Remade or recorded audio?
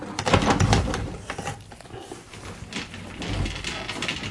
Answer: recorded